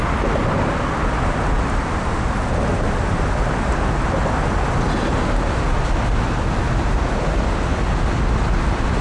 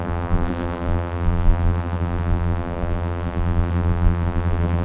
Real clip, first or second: first